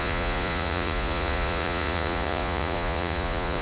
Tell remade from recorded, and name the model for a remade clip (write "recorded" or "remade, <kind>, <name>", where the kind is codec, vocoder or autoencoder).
remade, vocoder, Vocos